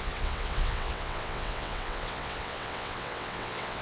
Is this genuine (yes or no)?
no